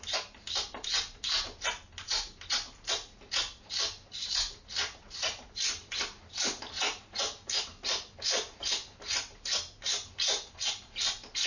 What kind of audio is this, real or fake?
real